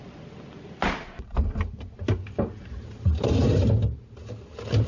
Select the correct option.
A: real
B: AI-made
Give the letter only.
A